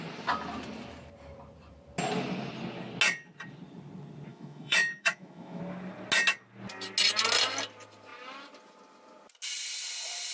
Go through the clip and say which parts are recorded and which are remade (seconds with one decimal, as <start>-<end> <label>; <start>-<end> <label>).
0.0-4.3 recorded; 4.3-5.6 remade; 5.6-10.3 recorded